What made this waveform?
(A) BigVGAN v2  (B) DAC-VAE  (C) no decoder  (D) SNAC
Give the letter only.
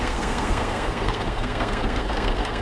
D